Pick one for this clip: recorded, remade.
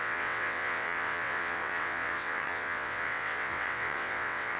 remade